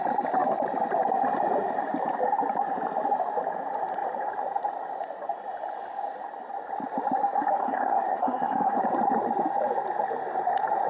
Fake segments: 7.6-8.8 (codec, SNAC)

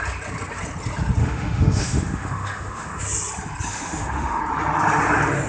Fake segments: 1.2-3.0 (autoencoder, DAC-VAE); 3.7-4.4

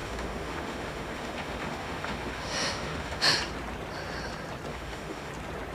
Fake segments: 0.0-3.3 (autoencoder, DAC-VAE); 4.7-5.3

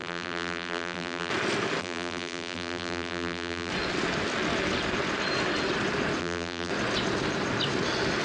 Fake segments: 0.0-1.3 (vocoder, BigVGAN v2); 1.8-3.7; 6.2-6.7

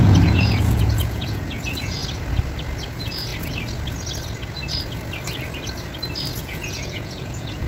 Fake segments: 0.0-2.0 (vocoder, Vocos); 2.9-3.3; 6.4-7.7

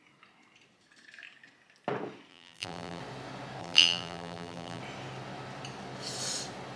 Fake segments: 2.3-3.0 (vocoder, BigVGAN v2); 3.6-4.8

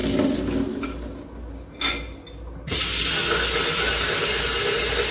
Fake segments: none